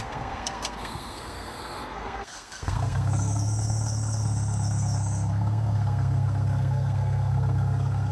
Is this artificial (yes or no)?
yes